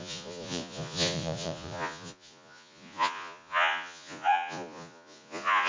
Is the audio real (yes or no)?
no